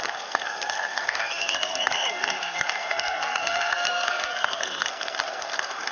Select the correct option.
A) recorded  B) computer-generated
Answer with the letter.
B